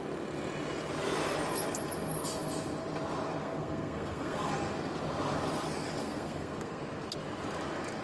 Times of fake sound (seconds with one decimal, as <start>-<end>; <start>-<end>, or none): 3.4-4.5; 6.0-6.8